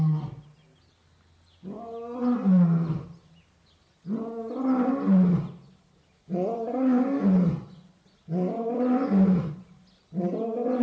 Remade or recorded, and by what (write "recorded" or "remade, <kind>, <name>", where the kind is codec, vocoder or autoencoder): recorded